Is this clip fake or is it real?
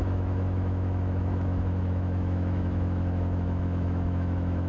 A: fake